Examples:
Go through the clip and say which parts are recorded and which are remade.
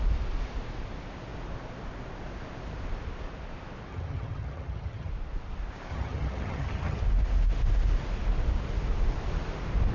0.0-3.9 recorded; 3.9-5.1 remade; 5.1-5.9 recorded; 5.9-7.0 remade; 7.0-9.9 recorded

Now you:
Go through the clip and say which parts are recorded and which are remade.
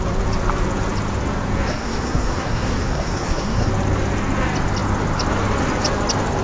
0.0-1.7 recorded; 1.7-3.7 remade; 3.7-6.4 recorded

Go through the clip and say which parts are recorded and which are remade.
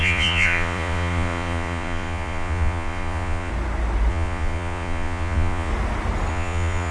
0.0-3.5 remade; 3.5-4.1 recorded; 4.1-5.7 remade; 5.7-6.3 recorded; 6.3-6.9 remade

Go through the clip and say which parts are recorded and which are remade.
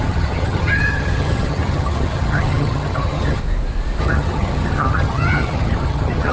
0.0-3.4 remade; 3.4-4.0 recorded; 4.0-6.3 remade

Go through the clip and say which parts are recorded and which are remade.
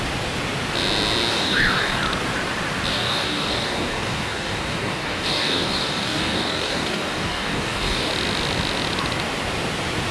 0.0-1.3 recorded; 1.3-2.0 remade; 2.0-2.9 recorded; 2.9-8.1 remade; 8.1-10.1 recorded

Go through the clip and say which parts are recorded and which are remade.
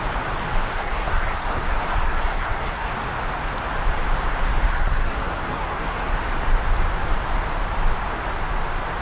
0.0-0.7 recorded; 0.7-2.9 remade; 2.9-4.7 recorded; 4.7-6.1 remade; 6.1-9.0 recorded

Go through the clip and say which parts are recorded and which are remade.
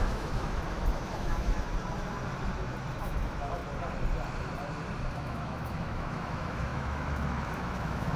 0.0-1.7 remade; 1.7-2.9 recorded; 2.9-3.6 remade; 3.6-5.0 recorded; 5.0-8.2 remade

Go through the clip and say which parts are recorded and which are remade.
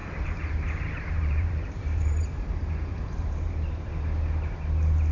0.0-2.3 remade; 2.3-2.9 recorded; 2.9-3.9 remade; 3.9-5.1 recorded